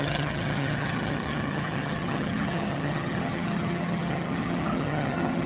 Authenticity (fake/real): fake